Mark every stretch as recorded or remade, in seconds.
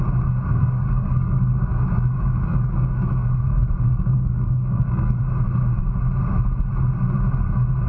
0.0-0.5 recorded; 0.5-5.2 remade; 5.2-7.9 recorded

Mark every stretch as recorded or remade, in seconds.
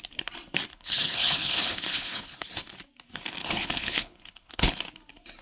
0.0-0.7 recorded; 0.7-2.5 remade; 2.5-3.4 recorded; 3.4-4.8 remade; 4.8-5.4 recorded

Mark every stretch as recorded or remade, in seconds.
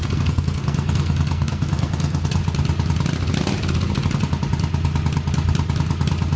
0.0-2.4 remade; 2.4-6.4 recorded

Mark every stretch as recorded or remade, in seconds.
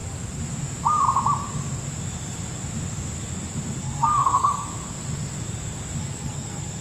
0.0-3.8 recorded; 3.8-4.7 remade; 4.7-6.0 recorded; 6.0-6.8 remade